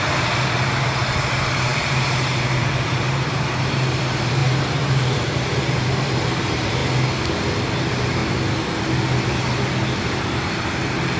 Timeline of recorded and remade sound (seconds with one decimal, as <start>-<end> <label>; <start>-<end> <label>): 0.0-6.8 remade; 6.8-7.8 recorded; 7.8-8.2 remade; 8.2-10.1 recorded; 10.1-11.2 remade